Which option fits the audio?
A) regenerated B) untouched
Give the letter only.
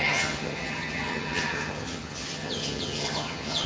A